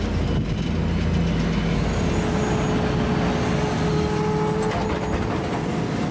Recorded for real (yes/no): yes